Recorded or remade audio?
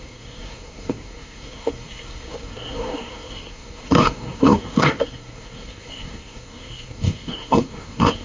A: remade